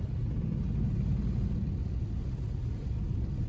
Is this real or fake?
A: real